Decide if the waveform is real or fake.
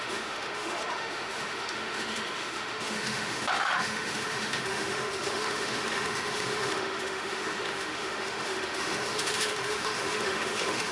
fake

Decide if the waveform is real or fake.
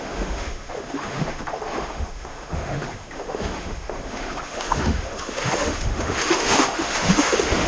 fake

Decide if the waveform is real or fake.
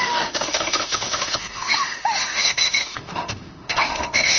fake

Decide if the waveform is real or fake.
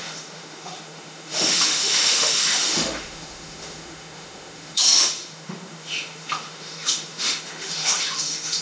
fake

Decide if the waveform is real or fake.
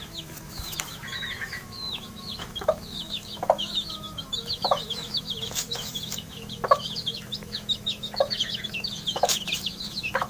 fake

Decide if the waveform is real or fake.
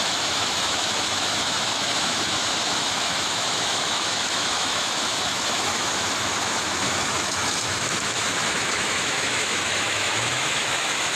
fake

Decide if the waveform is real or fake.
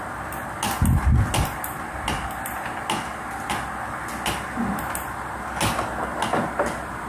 real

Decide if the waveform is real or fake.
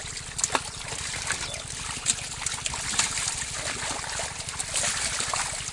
real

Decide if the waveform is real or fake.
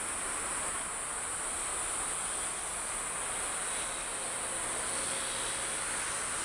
real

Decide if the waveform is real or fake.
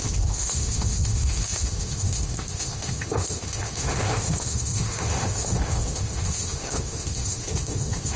fake